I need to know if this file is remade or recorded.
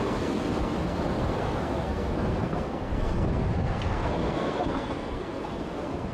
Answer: remade